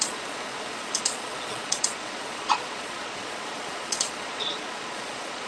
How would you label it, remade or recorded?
remade